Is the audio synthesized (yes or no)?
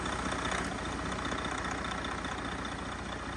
no